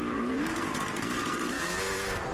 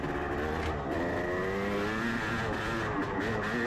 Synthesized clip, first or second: first